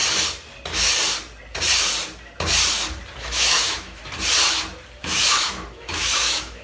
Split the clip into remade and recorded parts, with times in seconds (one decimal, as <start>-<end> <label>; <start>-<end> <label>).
0.0-3.2 recorded; 3.2-4.0 remade; 4.0-5.0 recorded; 5.0-6.6 remade